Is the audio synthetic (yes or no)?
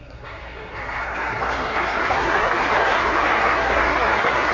yes